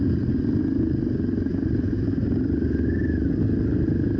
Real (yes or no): yes